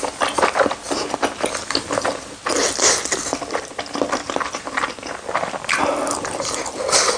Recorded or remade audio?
recorded